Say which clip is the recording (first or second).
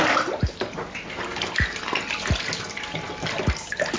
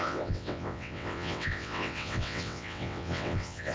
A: first